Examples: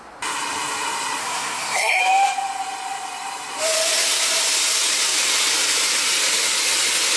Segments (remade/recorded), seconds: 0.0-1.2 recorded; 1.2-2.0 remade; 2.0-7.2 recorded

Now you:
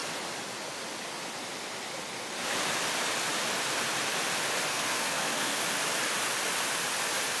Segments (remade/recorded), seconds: 0.0-4.7 recorded; 4.7-5.6 remade; 5.6-7.4 recorded

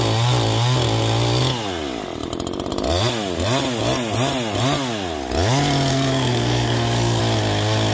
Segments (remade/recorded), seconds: 0.0-5.9 recorded; 5.9-7.2 remade; 7.2-7.9 recorded

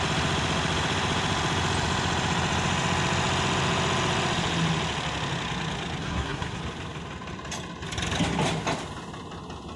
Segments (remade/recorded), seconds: 0.0-6.0 recorded; 6.0-6.6 remade; 6.6-9.8 recorded

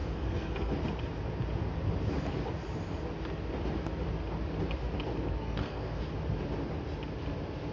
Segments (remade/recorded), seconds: 0.0-0.7 remade; 0.7-5.4 recorded; 5.4-6.0 remade; 6.0-7.7 recorded